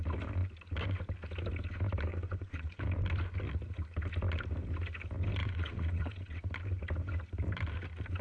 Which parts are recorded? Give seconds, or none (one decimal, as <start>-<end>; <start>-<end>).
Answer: 0.0-2.1; 2.8-5.4; 6.4-8.2